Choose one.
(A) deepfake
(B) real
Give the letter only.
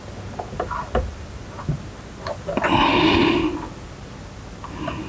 B